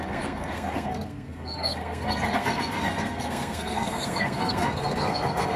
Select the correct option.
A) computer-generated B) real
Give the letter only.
A